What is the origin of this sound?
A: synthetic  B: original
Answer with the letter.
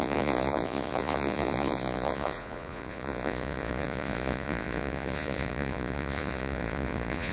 A